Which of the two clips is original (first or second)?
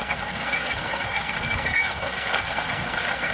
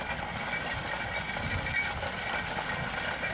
second